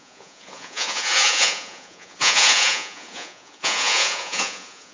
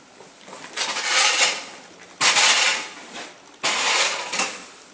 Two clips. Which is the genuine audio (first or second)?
second